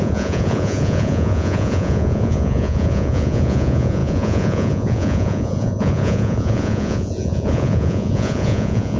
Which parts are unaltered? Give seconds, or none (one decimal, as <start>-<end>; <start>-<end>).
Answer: none